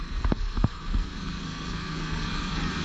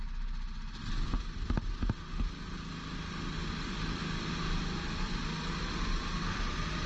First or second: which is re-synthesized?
first